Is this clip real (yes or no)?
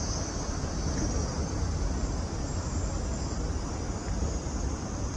yes